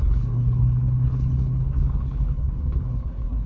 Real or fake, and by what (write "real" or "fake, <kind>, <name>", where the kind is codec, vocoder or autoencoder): fake, codec, HILCodec